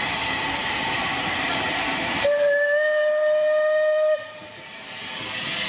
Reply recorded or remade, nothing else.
recorded